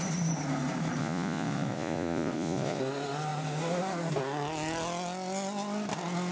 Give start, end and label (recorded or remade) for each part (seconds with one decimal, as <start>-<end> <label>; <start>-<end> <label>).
0.0-1.0 recorded; 1.0-2.8 remade; 2.8-6.3 recorded